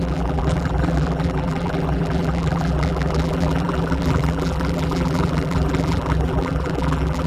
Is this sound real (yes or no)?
no